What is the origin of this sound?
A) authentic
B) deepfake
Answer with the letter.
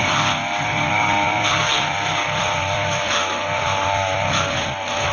A